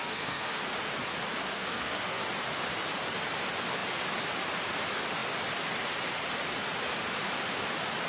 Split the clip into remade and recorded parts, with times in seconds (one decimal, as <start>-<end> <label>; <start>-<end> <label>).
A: 0.0-0.6 remade; 0.6-1.4 recorded; 1.4-2.2 remade; 2.2-8.1 recorded

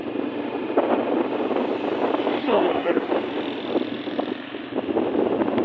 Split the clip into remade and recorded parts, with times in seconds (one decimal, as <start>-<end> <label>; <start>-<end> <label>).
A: 0.0-2.4 recorded; 2.4-3.1 remade; 3.1-5.6 recorded

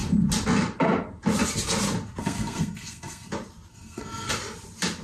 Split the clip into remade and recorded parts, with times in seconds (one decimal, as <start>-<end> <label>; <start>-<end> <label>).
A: 0.0-2.2 recorded; 2.2-3.3 remade; 3.3-3.7 recorded; 3.7-4.3 remade; 4.3-5.0 recorded

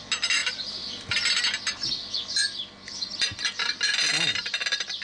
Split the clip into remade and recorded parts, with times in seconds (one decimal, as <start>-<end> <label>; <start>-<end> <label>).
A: 0.0-5.0 recorded

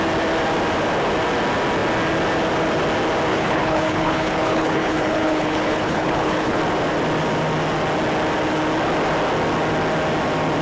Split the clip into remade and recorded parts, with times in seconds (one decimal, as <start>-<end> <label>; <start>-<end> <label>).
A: 0.0-3.3 recorded; 3.3-6.6 remade; 6.6-10.6 recorded